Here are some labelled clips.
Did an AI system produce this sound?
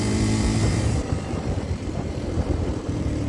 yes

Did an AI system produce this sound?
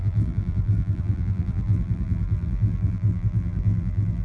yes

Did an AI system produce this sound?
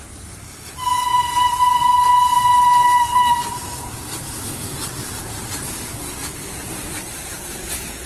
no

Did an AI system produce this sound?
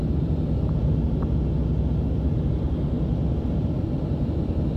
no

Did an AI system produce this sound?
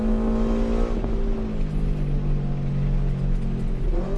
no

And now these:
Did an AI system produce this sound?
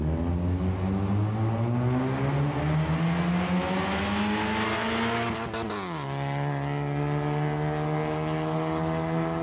no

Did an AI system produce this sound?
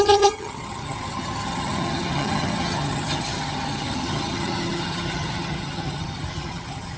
yes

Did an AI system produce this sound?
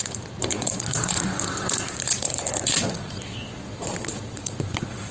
yes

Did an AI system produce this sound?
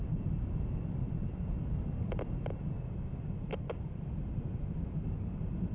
no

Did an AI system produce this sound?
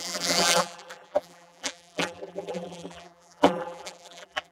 yes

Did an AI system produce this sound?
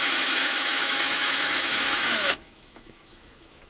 yes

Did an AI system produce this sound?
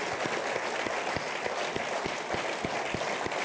no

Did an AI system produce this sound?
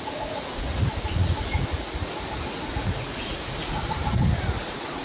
yes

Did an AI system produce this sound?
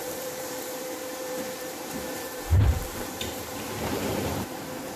yes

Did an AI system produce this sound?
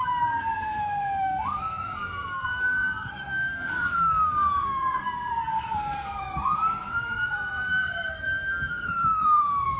yes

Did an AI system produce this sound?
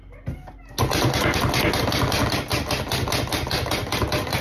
no